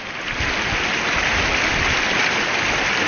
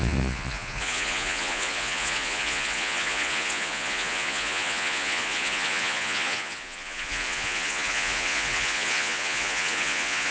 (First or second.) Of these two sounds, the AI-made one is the second